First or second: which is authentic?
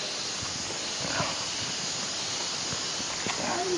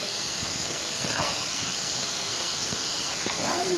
first